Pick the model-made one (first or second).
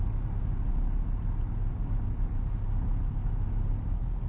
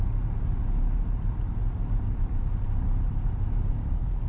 second